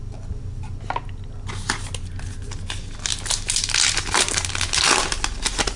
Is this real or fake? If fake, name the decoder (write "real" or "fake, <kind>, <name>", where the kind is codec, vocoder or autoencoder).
real